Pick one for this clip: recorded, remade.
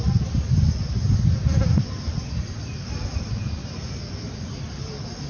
recorded